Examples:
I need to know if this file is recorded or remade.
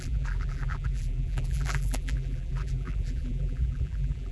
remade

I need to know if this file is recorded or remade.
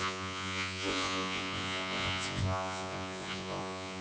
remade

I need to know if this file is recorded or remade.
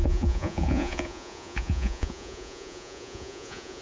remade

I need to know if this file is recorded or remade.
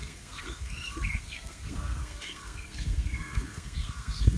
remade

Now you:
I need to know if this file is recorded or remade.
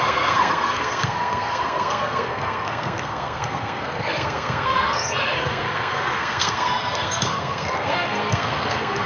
remade